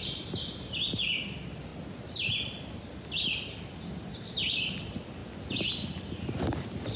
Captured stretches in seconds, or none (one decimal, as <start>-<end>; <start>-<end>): 0.0-7.0